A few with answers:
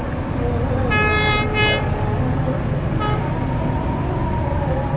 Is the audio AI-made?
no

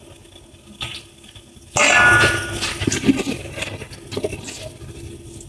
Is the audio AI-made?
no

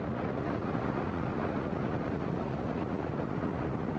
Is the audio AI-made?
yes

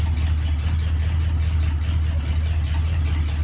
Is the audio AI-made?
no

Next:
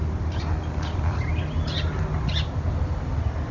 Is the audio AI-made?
no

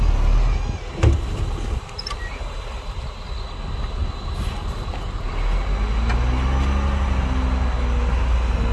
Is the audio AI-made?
no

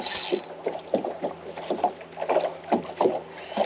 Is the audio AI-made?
no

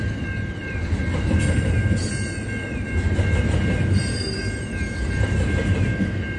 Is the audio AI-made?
no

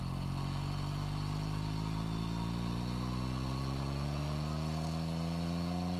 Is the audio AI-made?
no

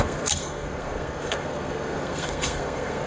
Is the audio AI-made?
yes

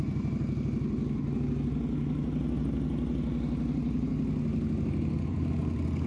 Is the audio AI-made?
no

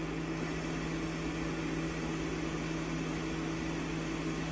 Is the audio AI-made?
no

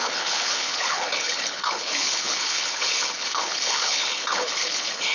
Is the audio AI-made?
yes